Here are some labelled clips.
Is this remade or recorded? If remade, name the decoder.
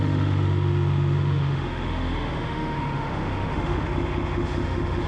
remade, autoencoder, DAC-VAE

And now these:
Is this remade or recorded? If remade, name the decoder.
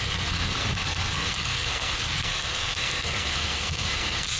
remade, codec, SNAC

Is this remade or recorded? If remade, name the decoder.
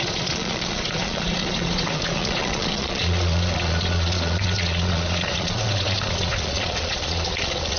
remade, vocoder, Vocos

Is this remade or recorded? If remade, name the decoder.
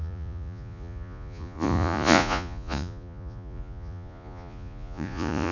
remade, vocoder, Vocos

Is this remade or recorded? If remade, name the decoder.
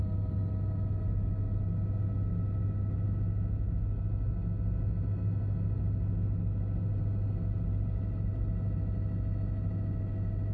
recorded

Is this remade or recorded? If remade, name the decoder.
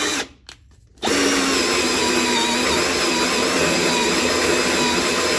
recorded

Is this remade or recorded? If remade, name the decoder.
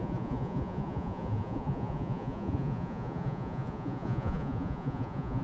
remade, vocoder, Vocos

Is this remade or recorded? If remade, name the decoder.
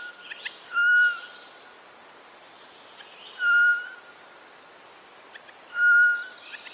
recorded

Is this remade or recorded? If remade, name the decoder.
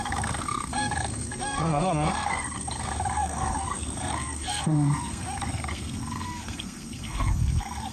remade, codec, SNAC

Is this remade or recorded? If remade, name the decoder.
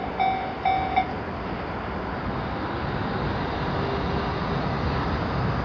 recorded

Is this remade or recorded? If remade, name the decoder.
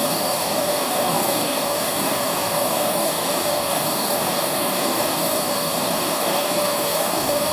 remade, codec, DAC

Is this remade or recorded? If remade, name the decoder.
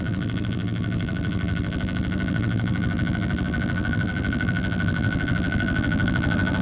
remade, vocoder, BigVGAN v2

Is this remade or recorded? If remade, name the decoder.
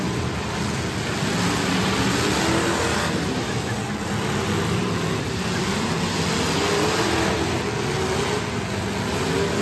recorded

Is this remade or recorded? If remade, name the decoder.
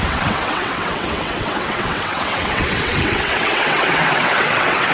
remade, vocoder, WaveNeXt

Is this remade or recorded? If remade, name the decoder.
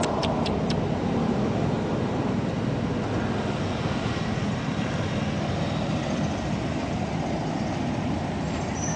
recorded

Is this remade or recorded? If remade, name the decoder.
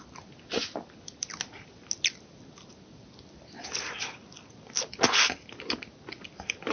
recorded